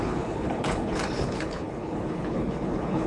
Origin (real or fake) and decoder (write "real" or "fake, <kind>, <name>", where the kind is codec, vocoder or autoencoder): fake, codec, HILCodec